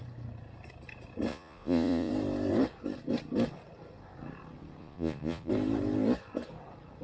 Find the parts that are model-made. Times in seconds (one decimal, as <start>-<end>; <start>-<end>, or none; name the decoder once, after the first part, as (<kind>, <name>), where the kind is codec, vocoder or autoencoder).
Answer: 1.3-2.1 (vocoder, Vocos); 4.8-5.5